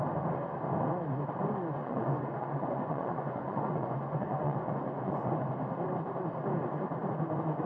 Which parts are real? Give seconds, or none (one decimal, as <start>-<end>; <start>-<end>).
0.0-1.8; 5.5-7.7